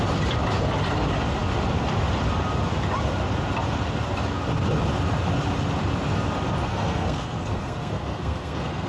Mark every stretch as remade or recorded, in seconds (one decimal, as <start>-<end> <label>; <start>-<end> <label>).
0.0-6.7 recorded; 6.7-8.9 remade